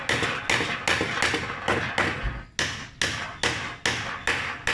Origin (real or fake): real